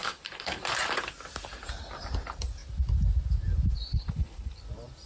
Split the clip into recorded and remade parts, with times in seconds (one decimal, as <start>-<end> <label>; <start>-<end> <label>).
0.0-0.6 remade; 0.6-3.9 recorded; 3.9-4.6 remade; 4.6-5.1 recorded